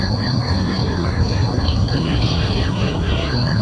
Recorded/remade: remade